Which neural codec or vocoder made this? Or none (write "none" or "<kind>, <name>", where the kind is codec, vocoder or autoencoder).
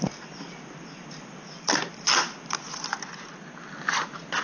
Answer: none